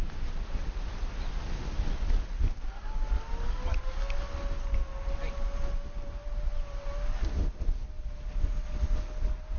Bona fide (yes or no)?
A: yes